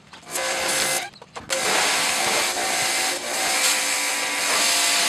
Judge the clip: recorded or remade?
recorded